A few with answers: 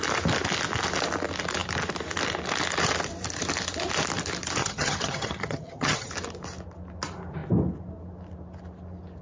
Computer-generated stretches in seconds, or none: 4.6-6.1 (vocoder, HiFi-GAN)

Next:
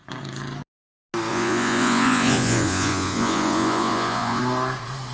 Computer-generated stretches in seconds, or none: 1.3-4.4 (vocoder, Vocos)

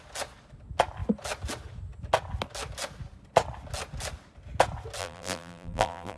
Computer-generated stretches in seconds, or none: 5.0-6.2 (vocoder, BigVGAN v2)

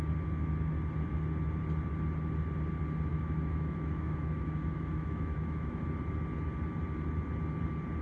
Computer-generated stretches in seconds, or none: 3.1-5.8 (autoencoder, DAC-VAE)

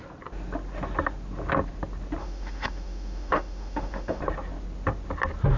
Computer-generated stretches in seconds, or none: 2.2-4.2 (autoencoder, DAC-VAE)